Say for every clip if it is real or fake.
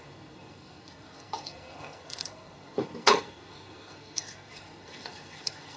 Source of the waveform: fake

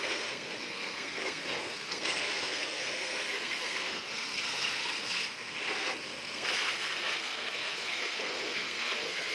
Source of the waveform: fake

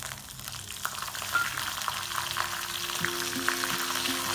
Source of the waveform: real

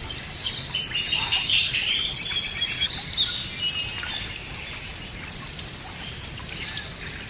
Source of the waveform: real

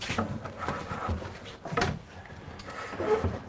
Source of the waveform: real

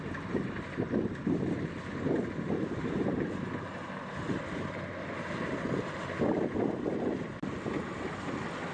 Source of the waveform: real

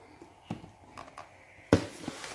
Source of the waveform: real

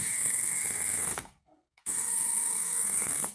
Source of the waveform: fake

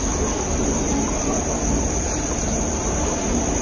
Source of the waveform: real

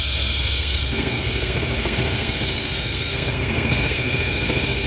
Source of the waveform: fake